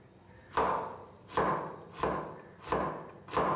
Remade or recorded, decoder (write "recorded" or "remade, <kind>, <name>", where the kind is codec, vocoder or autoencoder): recorded